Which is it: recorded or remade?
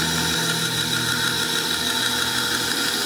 recorded